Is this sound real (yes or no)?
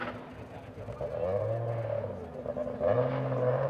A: yes